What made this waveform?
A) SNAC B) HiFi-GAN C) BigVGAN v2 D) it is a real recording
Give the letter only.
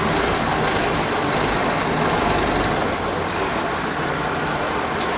D